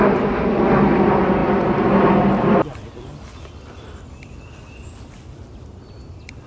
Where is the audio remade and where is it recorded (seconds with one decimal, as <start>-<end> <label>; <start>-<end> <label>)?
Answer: 0.0-6.5 recorded